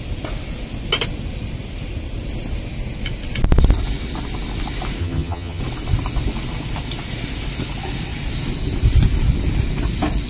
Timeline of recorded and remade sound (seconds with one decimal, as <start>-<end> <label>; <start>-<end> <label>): 0.0-5.0 recorded; 5.0-5.6 remade; 5.6-10.3 recorded

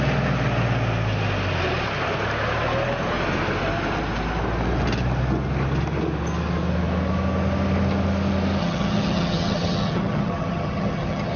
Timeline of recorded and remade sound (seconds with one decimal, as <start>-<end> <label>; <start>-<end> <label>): 0.0-8.6 recorded; 8.6-11.4 remade